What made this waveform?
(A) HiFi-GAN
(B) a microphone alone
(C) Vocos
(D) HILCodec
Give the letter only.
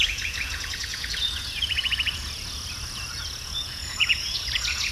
C